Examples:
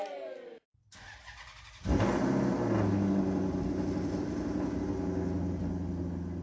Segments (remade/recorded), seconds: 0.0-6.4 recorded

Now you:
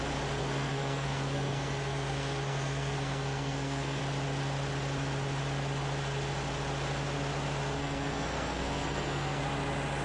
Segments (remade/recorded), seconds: 0.0-0.4 recorded; 0.4-4.0 remade; 4.0-7.8 recorded; 7.8-9.4 remade; 9.4-10.0 recorded

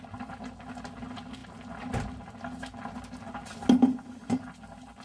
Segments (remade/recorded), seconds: 0.0-5.0 recorded

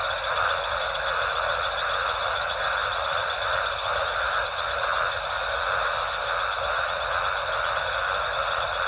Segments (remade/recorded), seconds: 0.0-8.9 recorded

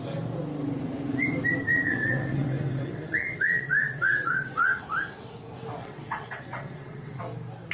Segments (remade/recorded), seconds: 0.0-1.7 recorded; 1.7-4.8 remade; 4.8-5.8 recorded; 5.8-7.2 remade; 7.2-7.7 recorded